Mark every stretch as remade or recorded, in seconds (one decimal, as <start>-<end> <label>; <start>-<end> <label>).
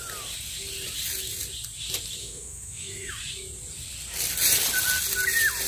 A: 0.0-2.2 recorded; 2.2-3.1 remade; 3.1-5.7 recorded